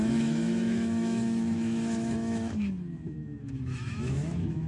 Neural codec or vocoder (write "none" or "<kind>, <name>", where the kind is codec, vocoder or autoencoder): autoencoder, DAC-VAE